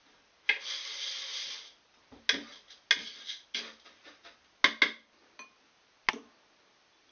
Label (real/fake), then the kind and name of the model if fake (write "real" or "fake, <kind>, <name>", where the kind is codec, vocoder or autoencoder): real